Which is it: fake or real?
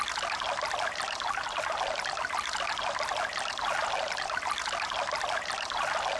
real